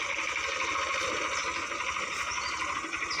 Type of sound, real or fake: real